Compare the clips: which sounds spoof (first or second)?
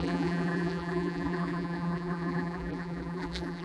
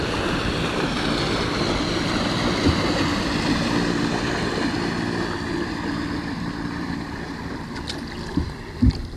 first